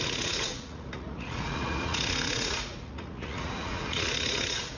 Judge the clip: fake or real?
fake